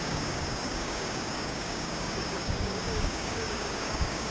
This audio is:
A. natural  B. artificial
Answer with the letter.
B